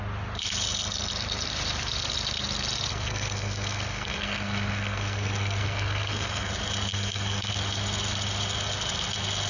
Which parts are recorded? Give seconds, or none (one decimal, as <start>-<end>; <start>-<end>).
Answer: 0.0-2.9; 6.5-6.9; 7.5-9.5